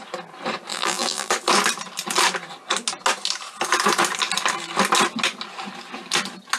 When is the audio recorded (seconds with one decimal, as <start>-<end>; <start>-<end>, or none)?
0.0-0.7; 1.3-6.6